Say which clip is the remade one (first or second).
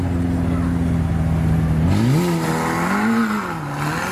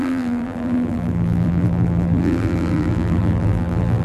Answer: second